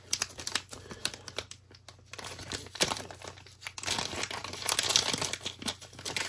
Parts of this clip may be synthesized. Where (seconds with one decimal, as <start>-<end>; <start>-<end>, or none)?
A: none